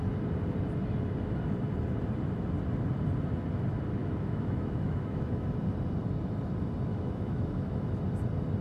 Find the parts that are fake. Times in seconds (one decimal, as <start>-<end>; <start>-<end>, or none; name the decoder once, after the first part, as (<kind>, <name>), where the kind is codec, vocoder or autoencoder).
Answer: 4.0-5.5 (autoencoder, DAC-VAE); 6.9-8.0